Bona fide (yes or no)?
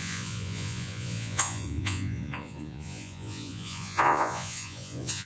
no